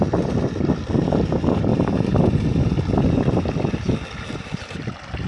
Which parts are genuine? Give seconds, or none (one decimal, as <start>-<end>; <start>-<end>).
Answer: 0.0-5.3